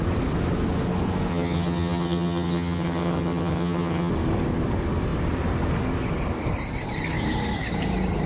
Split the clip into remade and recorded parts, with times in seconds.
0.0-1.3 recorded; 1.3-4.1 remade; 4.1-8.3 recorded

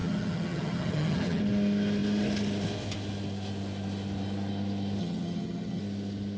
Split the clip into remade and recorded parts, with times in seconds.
0.0-1.4 remade; 1.4-5.0 recorded; 5.0-5.8 remade; 5.8-6.4 recorded

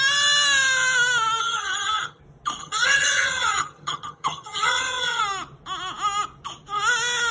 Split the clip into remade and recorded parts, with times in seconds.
0.0-1.4 recorded; 1.4-2.2 remade; 2.2-2.6 recorded; 2.6-5.2 remade; 5.2-7.3 recorded

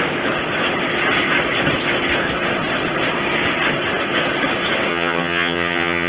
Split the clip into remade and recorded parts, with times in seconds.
0.0-4.9 recorded; 4.9-6.1 remade

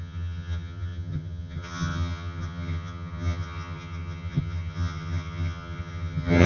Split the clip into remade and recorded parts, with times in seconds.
0.0-6.5 remade

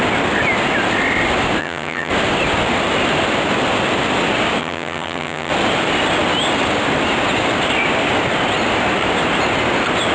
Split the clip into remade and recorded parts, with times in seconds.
0.0-1.6 recorded; 1.6-2.1 remade; 2.1-4.6 recorded; 4.6-5.5 remade; 5.5-10.1 recorded

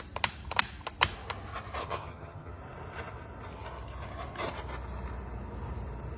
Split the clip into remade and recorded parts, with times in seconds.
0.0-1.8 recorded; 1.8-2.6 remade; 2.6-6.2 recorded